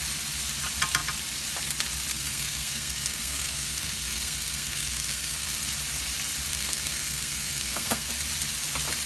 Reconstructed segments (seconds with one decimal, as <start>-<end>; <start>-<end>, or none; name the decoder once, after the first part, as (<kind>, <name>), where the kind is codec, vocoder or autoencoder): 2.1-5.6 (codec, SNAC); 6.5-8.1

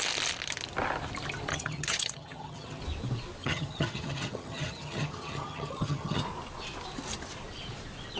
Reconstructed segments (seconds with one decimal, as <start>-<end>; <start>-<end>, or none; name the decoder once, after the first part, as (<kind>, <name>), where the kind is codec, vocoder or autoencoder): 1.5-2.8 (vocoder, HiFi-GAN); 3.4-6.2

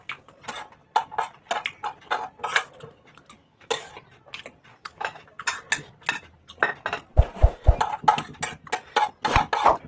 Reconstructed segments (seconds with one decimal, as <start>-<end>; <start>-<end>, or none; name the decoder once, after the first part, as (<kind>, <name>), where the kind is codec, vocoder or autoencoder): 3.4-3.9 (autoencoder, DAC-VAE); 4.7-5.3

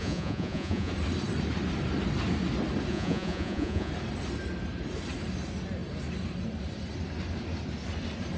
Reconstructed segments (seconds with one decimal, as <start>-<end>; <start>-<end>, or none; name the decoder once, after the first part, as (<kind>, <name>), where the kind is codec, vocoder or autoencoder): 0.0-0.9 (vocoder, Vocos); 2.9-3.9

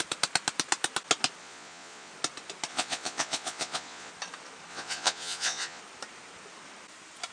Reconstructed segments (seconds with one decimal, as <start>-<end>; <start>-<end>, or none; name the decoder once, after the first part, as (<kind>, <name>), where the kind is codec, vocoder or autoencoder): 1.4-2.1 (vocoder, Vocos); 2.7-4.1; 4.7-5.8